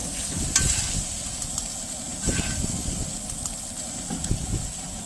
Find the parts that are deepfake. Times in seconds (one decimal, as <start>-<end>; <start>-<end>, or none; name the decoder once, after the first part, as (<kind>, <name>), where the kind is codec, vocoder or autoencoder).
none